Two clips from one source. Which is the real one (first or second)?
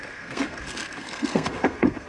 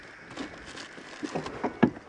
second